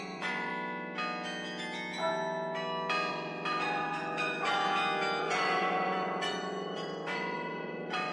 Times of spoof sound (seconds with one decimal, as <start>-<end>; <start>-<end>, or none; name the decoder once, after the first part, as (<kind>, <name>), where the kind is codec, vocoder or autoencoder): 0.0-0.5 (vocoder, Vocos); 3.1-4.6; 5.2-8.1